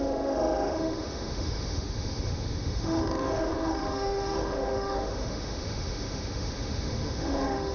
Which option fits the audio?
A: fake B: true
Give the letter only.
A